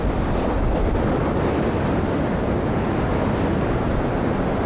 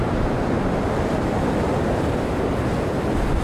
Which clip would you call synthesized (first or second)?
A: second